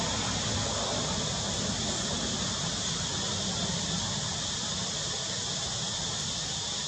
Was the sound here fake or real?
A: real